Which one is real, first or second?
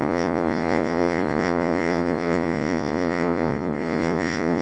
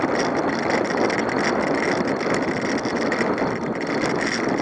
second